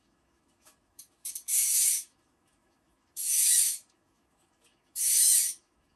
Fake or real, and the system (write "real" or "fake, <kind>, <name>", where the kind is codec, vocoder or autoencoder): fake, autoencoder, DAC-VAE